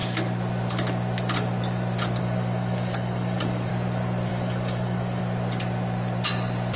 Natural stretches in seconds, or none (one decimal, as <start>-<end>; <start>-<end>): 0.0-2.2; 3.7-4.3; 5.2-6.8